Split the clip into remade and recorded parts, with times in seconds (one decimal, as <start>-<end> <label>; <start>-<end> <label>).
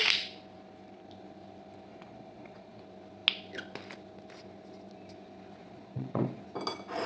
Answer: 0.0-1.9 recorded; 1.9-2.8 remade; 2.8-5.6 recorded; 5.6-6.4 remade; 6.4-7.1 recorded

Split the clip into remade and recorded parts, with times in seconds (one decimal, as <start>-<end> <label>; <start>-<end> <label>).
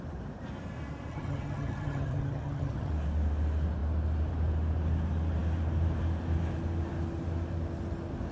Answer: 0.0-1.1 recorded; 1.1-2.9 remade; 2.9-8.3 recorded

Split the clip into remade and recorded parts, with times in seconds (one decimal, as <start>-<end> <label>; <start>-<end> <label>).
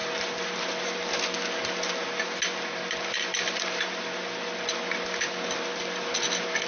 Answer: 0.0-6.7 recorded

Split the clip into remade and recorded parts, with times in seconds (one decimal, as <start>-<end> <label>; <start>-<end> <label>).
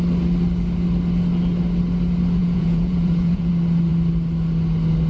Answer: 0.0-2.4 recorded; 2.4-3.5 remade; 3.5-5.1 recorded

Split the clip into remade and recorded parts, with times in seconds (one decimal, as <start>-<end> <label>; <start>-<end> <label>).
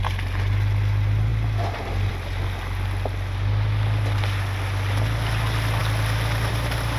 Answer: 0.0-7.0 recorded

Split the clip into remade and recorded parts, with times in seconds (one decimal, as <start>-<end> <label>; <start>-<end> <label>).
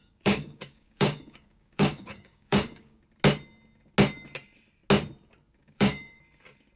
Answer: 0.0-3.0 remade; 3.0-5.6 recorded; 5.6-6.2 remade; 6.2-6.8 recorded